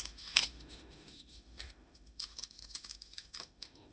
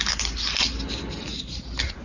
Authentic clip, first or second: second